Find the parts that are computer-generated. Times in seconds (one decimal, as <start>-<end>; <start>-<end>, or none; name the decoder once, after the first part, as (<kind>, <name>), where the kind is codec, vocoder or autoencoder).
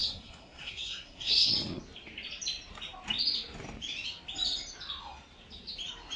0.0-1.5 (codec, SNAC)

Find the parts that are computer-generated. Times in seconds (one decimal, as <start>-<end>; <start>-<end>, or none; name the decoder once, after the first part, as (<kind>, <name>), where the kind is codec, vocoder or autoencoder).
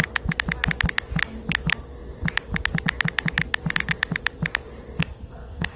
5.0-5.8 (codec, SNAC)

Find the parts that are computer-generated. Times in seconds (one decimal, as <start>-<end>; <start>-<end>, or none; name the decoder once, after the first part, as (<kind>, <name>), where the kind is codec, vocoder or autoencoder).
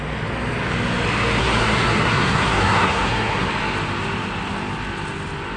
1.4-3.5 (codec, SNAC)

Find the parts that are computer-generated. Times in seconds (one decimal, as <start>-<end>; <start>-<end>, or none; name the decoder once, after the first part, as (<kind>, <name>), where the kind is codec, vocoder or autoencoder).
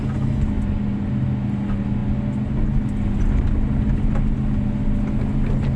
none